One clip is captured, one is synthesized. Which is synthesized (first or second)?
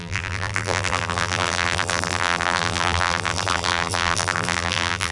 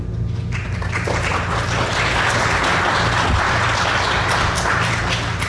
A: first